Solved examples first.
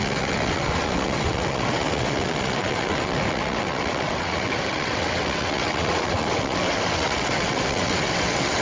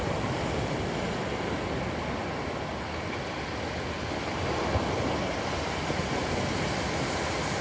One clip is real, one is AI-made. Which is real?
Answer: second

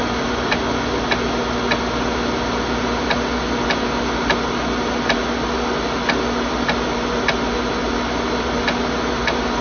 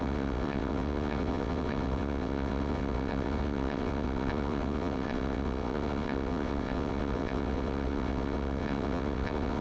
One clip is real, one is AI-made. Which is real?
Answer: first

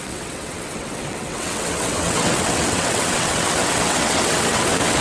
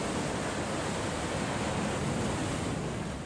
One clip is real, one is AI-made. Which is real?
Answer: second